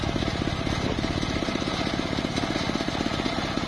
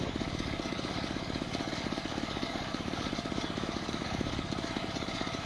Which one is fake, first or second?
second